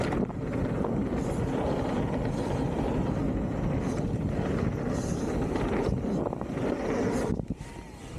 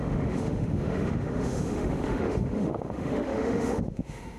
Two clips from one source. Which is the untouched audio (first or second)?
first